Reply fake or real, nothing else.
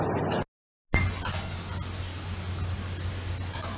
real